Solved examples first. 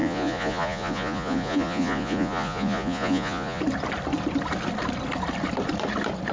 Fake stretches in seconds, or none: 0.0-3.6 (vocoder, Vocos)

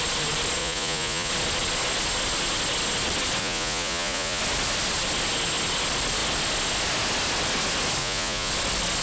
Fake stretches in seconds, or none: 0.6-1.3 (vocoder, Vocos); 3.4-4.4; 8.0-8.5

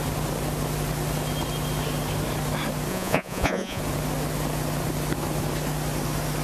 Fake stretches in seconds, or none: 2.9-3.8 (vocoder, Vocos)

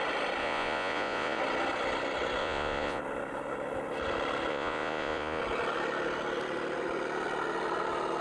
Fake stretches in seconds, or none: 0.4-1.4 (vocoder, Vocos); 2.4-3.0; 4.5-5.4

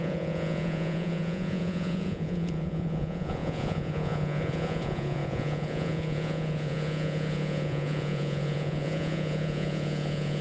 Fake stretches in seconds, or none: 0.0-10.4 (vocoder, Vocos)